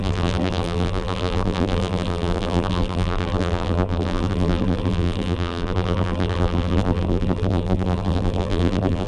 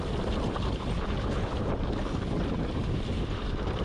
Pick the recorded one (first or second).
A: second